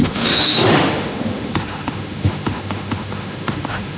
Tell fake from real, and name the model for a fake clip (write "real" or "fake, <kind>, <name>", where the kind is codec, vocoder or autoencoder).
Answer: fake, autoencoder, DAC-VAE